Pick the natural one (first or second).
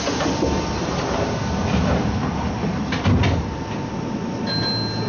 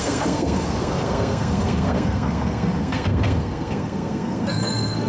first